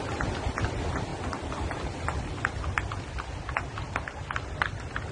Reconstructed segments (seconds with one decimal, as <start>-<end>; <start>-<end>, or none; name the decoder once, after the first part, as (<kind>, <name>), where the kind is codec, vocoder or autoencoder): none